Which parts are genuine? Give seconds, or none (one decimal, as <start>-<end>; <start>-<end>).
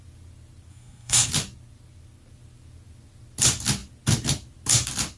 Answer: 0.0-0.7; 1.3-5.2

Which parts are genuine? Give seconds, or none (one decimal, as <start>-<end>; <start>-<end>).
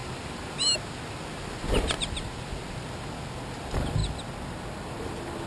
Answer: 0.0-5.5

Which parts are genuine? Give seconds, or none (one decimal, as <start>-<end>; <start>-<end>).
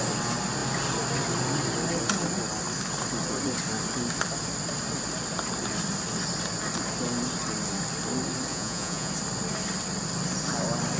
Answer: 0.0-8.5; 9.1-11.0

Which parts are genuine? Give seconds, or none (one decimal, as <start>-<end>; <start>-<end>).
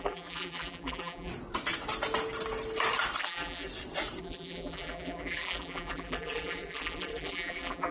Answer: 1.3-3.2; 3.7-4.2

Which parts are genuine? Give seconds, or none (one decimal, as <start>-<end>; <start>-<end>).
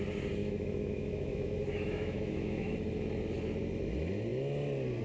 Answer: 0.0-0.4; 2.7-5.0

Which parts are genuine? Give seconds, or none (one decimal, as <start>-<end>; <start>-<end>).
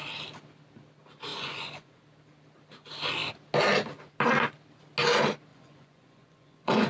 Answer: 0.0-1.3; 2.0-5.5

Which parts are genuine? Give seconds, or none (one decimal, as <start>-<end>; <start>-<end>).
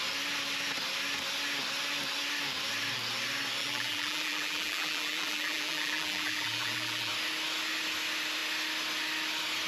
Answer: 0.0-3.6; 7.1-9.7